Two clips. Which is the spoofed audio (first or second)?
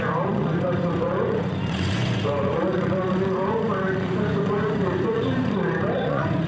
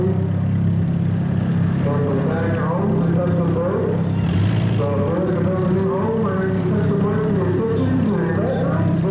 first